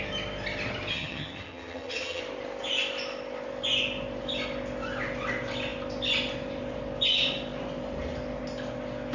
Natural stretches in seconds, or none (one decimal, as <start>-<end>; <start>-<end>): 0.0-0.9; 2.2-9.1

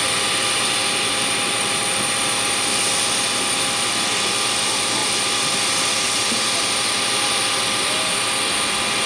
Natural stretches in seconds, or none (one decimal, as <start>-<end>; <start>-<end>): 0.0-9.1